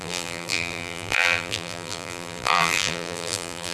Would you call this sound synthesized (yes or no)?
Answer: yes